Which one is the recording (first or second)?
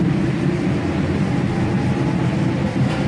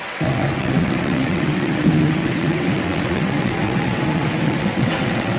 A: first